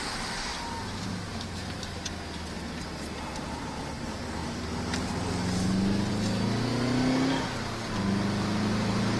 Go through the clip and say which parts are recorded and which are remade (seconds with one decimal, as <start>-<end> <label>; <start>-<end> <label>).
0.0-0.5 recorded; 0.5-1.8 remade; 1.8-9.2 recorded